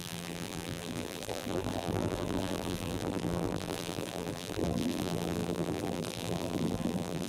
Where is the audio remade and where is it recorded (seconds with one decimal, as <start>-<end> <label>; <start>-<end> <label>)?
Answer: 0.0-7.3 remade